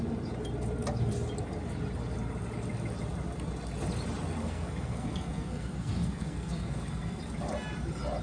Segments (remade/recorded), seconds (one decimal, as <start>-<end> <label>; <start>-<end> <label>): 0.0-4.4 recorded; 4.4-7.2 remade; 7.2-8.2 recorded